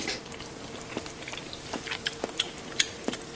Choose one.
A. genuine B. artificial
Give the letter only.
B